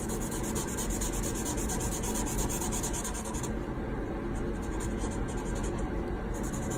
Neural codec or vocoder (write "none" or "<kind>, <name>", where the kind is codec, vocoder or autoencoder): none